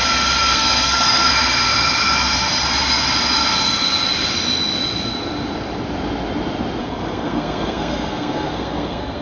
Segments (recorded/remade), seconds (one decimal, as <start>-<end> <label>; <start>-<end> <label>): 0.0-0.5 recorded; 0.5-1.3 remade; 1.3-6.8 recorded; 6.8-9.2 remade